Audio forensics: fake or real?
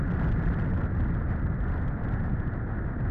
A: real